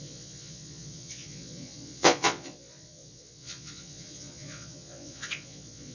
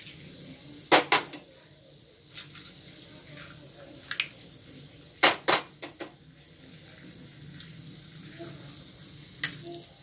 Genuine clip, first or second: second